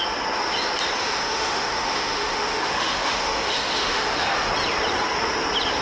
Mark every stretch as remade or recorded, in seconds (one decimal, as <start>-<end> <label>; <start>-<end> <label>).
0.0-1.0 recorded; 1.0-4.5 remade; 4.5-5.8 recorded